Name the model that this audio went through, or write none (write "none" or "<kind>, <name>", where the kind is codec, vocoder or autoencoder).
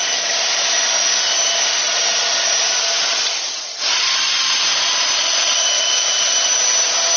none